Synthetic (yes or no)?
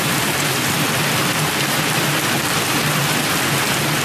no